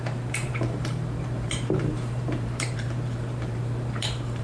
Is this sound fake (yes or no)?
yes